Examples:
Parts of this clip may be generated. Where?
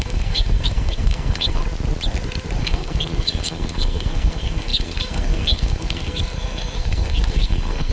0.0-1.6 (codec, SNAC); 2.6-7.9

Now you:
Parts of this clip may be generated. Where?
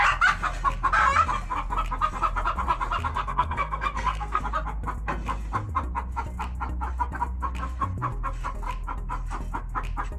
3.1-4.4 (codec, SNAC)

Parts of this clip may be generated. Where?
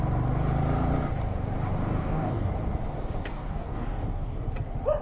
2.0-2.5 (codec, DAC); 3.3-4.5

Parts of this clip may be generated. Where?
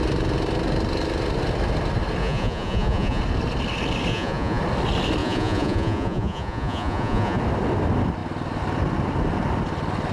2.2-3.2 (vocoder, Vocos); 4.1-4.6; 5.2-7.4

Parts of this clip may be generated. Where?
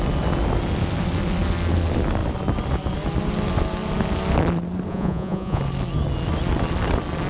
4.9-5.6 (vocoder, Vocos)